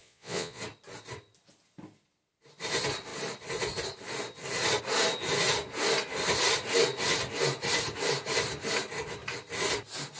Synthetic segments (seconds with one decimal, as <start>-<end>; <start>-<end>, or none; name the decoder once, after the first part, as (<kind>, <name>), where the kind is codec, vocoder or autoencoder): 0.0-0.6 (vocoder, Vocos)

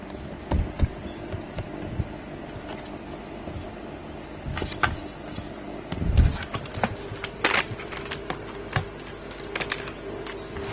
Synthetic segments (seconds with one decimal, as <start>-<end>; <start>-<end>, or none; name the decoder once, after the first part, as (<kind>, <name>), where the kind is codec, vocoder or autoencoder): none

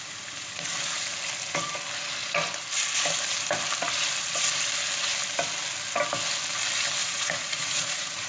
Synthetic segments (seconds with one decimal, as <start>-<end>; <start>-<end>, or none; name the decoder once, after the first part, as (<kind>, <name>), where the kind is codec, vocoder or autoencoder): 7.0-8.3 (vocoder, Vocos)

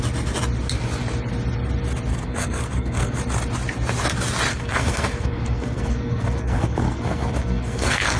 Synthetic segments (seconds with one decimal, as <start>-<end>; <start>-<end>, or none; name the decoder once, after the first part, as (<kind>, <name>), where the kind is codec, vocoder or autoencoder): 2.1-3.2 (codec, SNAC); 4.5-8.2

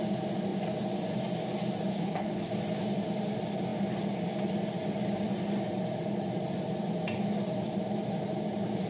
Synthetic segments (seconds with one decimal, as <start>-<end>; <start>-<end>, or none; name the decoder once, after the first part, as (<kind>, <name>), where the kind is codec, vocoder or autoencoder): 1.9-2.5 (codec, HILCodec)

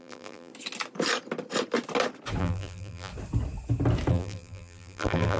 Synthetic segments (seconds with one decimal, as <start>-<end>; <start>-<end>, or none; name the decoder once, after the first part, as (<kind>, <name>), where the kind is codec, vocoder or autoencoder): 0.0-0.5 (vocoder, BigVGAN v2); 2.4-3.1; 4.1-5.4

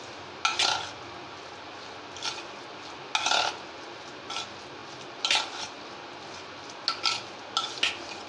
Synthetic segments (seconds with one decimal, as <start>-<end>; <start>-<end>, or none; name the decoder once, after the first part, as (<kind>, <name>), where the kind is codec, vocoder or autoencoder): none